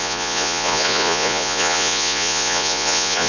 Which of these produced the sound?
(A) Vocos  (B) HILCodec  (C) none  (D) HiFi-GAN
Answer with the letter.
A